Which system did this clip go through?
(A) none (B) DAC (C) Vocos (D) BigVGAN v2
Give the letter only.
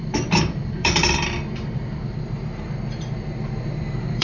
D